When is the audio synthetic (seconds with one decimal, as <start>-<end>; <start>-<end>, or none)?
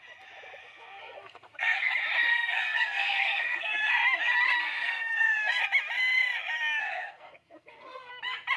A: 0.6-1.9; 2.3-3.9; 4.6-5.6; 6.8-8.1